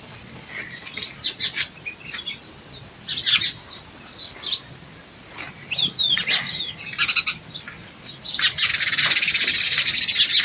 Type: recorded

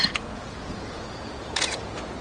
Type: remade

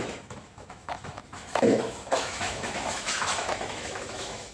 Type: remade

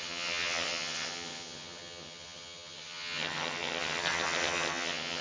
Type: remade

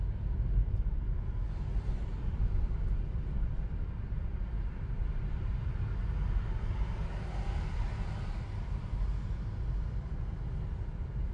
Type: recorded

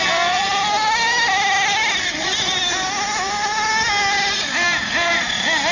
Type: recorded